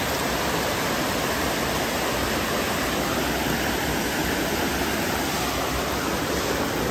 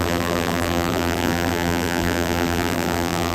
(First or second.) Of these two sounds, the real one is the first